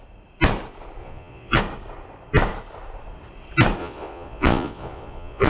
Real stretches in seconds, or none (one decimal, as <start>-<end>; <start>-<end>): 0.0-1.0; 1.6-3.8